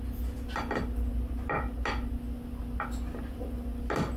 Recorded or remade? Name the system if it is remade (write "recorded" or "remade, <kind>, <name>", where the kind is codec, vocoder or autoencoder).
recorded